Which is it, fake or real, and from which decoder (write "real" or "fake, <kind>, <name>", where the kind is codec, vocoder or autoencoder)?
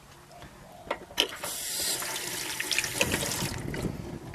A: real